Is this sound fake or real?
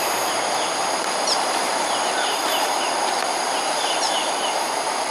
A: fake